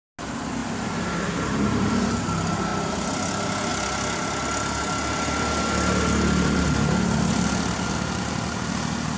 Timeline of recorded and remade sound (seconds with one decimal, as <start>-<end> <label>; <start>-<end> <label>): 0.0-0.6 recorded; 0.6-1.9 remade; 1.9-9.2 recorded